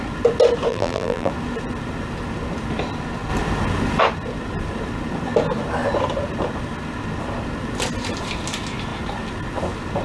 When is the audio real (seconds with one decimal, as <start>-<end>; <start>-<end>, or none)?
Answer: 0.0-0.7; 1.3-10.0